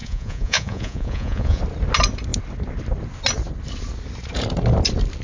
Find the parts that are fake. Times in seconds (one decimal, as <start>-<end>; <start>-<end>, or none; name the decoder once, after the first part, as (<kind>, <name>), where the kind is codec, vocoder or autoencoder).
0.0-1.6 (vocoder, Vocos)